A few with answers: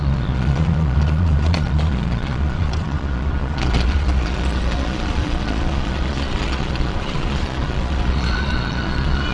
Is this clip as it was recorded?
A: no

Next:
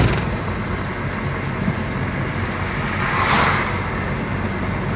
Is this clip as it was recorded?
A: yes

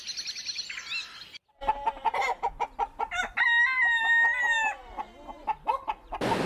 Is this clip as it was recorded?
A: yes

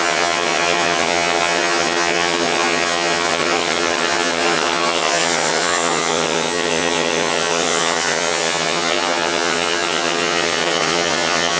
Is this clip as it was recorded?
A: no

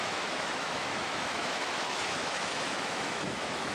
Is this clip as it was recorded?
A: no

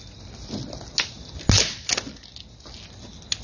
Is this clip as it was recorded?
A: yes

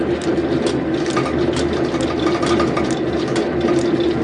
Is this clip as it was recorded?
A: yes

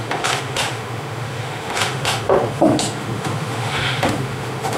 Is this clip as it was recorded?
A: no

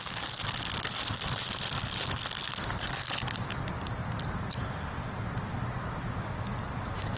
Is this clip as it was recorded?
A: yes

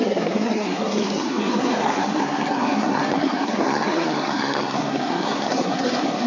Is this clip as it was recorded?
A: no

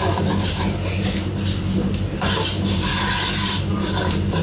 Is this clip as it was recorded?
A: yes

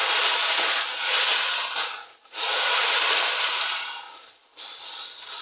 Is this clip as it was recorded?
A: yes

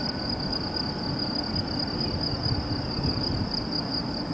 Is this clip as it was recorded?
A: yes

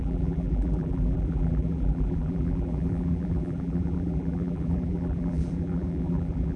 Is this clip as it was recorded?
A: no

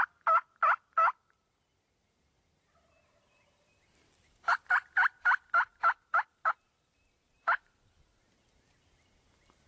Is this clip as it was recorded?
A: yes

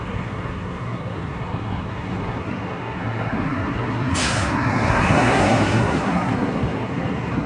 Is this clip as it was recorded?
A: no